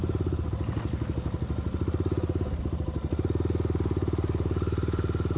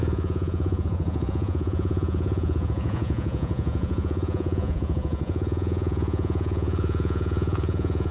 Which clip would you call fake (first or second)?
second